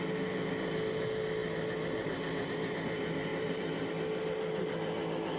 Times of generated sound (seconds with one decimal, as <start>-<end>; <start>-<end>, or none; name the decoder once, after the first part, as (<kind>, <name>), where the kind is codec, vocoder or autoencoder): 3.3-3.9 (vocoder, BigVGAN v2)

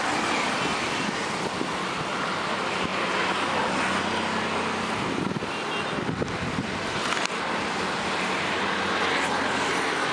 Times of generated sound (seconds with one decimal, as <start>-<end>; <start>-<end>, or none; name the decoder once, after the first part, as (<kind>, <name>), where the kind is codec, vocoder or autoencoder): none

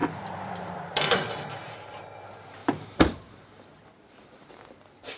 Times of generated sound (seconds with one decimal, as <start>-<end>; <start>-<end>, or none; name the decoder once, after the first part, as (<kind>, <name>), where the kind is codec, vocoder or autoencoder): 0.0-1.0 (vocoder, BigVGAN v2); 2.6-4.5

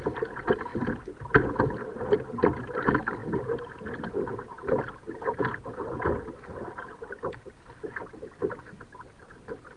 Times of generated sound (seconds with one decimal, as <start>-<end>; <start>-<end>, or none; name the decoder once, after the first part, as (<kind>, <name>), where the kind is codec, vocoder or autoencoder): 0.0-0.7 (vocoder, BigVGAN v2); 2.6-3.2; 7.5-9.8

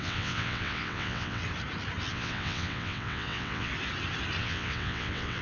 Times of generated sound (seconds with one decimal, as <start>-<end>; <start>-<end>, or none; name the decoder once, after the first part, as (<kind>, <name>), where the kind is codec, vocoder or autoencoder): 0.0-1.4 (vocoder, WaveNeXt); 2.1-3.7; 4.4-5.4